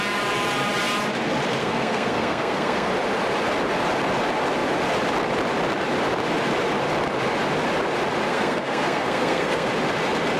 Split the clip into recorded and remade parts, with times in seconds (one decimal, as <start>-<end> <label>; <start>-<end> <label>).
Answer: 0.0-1.6 recorded; 1.6-2.9 remade; 2.9-8.3 recorded; 8.3-9.7 remade; 9.7-10.4 recorded